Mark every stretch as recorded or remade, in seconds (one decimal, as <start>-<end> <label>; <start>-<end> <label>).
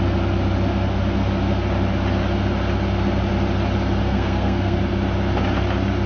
0.0-4.0 recorded; 4.0-4.8 remade; 4.8-6.1 recorded